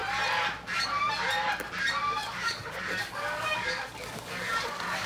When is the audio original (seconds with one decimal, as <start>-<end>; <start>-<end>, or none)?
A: 0.0-2.0